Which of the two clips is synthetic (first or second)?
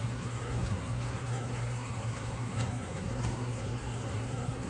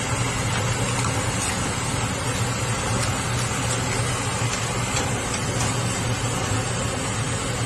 first